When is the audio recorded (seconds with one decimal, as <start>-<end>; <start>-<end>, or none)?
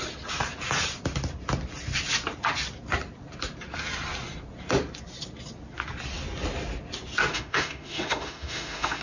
0.0-7.3